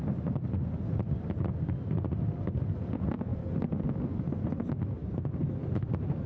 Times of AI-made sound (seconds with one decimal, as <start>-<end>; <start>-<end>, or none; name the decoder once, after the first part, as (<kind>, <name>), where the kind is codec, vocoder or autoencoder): 3.3-4.2 (vocoder, BigVGAN v2)